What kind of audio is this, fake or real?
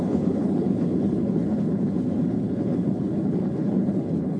fake